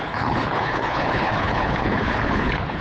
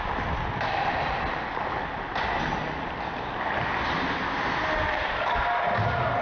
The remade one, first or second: first